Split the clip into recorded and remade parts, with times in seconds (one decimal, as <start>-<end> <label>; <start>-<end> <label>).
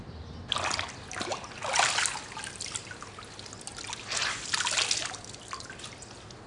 0.0-6.5 recorded